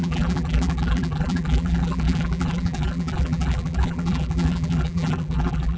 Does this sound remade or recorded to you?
remade